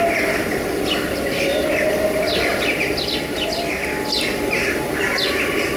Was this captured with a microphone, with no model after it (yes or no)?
yes